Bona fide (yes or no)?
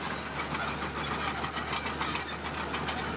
yes